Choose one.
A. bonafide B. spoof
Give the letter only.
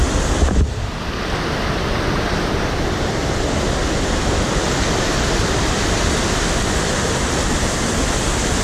A